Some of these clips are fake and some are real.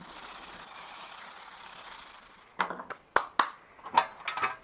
real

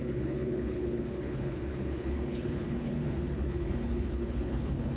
fake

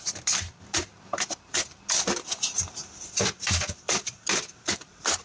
real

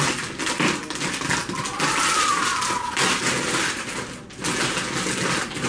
real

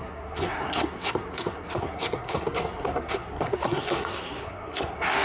fake